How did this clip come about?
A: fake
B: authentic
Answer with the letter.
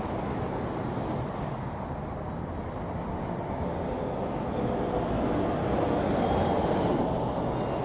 B